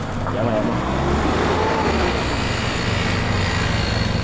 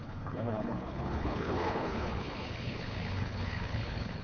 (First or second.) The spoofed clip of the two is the second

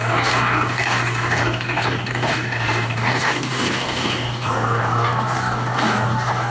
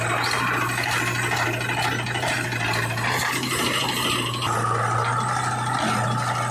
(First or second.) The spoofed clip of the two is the first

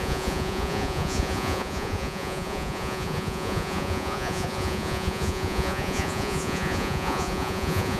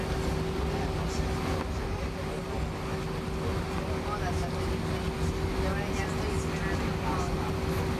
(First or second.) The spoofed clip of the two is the first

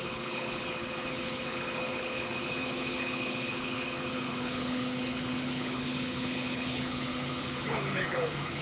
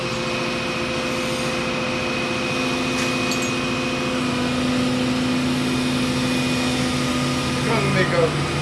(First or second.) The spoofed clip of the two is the first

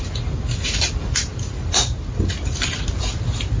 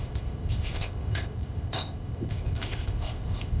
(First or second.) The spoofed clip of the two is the second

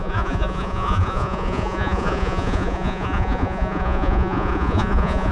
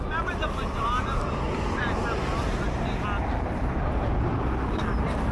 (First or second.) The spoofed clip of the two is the first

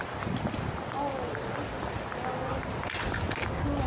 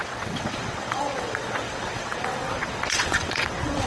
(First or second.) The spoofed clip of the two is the second